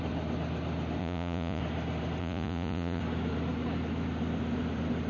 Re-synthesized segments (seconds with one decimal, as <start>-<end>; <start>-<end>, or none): 1.0-1.6; 2.2-3.0